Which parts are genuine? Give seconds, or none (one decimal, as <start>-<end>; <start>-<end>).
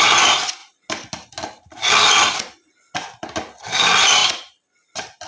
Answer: 0.0-5.3